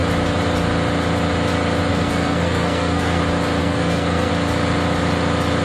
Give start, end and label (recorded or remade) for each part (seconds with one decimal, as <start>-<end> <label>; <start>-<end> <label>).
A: 0.0-1.9 recorded; 1.9-3.2 remade; 3.2-3.6 recorded; 3.6-4.3 remade; 4.3-5.6 recorded